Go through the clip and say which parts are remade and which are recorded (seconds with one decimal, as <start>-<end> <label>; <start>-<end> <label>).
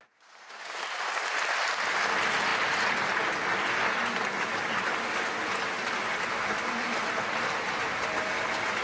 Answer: 0.0-8.8 recorded